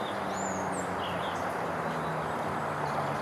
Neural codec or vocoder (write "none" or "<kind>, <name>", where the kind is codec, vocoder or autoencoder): none